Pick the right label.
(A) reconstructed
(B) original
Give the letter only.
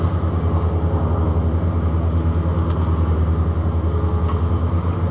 B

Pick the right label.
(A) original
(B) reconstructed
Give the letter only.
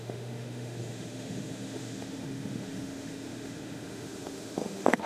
B